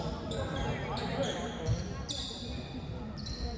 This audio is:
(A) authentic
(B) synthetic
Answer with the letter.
A